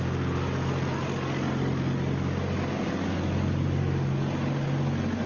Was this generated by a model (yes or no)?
no